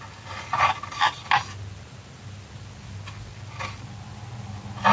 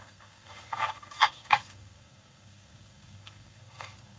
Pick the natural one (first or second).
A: first